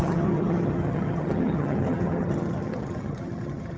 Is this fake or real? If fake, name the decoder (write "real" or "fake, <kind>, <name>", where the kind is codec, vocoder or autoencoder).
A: fake, vocoder, HiFi-GAN